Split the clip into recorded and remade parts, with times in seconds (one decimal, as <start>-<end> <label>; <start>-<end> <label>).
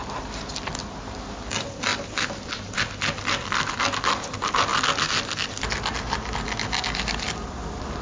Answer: 0.0-8.0 recorded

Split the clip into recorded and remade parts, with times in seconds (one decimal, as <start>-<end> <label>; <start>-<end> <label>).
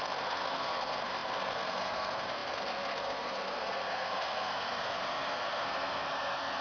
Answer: 0.0-6.6 remade